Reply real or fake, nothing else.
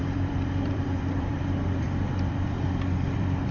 fake